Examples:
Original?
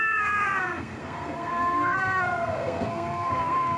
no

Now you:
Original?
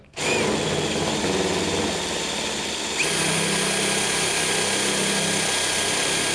yes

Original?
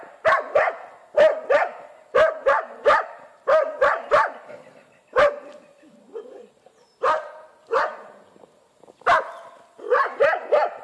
yes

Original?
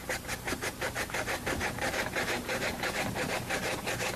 yes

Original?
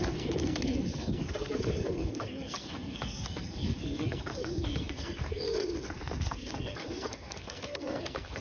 no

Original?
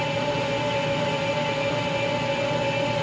yes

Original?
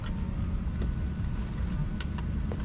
yes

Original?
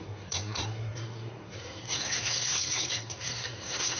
no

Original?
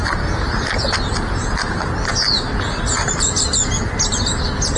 yes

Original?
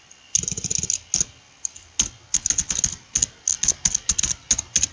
yes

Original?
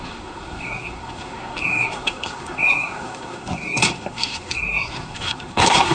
no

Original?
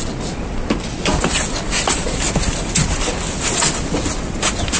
yes